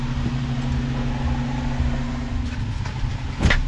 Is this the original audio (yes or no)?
yes